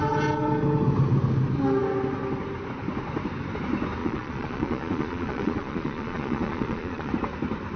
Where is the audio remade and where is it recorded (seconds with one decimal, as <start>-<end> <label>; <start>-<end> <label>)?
0.0-4.0 recorded; 4.0-7.1 remade; 7.1-7.8 recorded